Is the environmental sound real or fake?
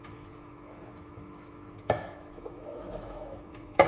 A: fake